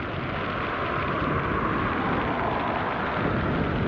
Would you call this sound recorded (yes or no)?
yes